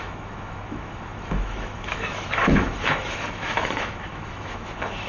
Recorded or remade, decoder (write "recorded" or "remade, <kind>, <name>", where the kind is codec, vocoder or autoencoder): remade, autoencoder, DAC-VAE